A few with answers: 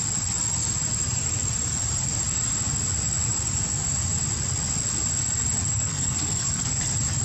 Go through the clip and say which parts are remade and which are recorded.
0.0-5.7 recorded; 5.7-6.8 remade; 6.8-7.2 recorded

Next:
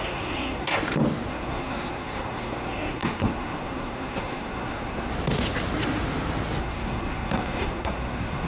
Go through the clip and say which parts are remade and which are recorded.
0.0-0.7 remade; 0.7-1.3 recorded; 1.3-5.1 remade; 5.1-6.6 recorded; 6.6-8.5 remade

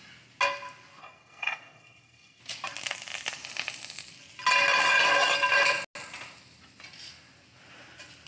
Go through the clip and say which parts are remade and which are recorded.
0.0-1.0 recorded; 1.0-2.4 remade; 2.4-8.3 recorded